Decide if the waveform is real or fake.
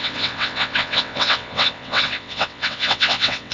fake